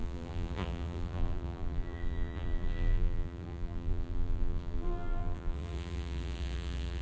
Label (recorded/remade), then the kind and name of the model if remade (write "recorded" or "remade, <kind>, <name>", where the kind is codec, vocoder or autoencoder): remade, vocoder, BigVGAN v2